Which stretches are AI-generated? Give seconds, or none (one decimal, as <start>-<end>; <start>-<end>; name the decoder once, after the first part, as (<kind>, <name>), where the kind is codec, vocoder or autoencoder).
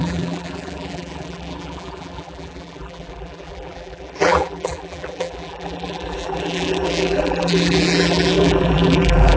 0.0-9.4 (vocoder, BigVGAN v2)